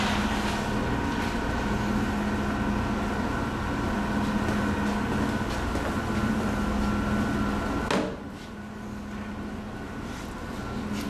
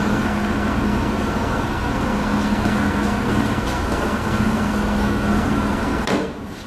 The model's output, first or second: second